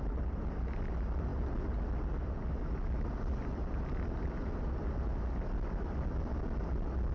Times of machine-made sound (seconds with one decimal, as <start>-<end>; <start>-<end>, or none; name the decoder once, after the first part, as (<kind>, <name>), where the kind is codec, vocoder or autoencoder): none